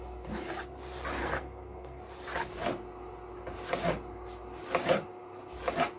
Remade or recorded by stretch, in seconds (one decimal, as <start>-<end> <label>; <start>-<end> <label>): 0.0-1.2 recorded; 1.2-2.0 remade; 2.0-6.0 recorded